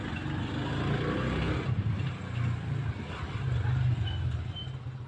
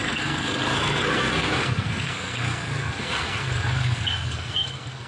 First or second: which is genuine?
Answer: first